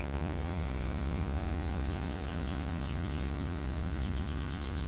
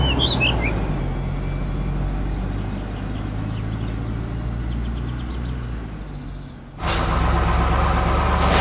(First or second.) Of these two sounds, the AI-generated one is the first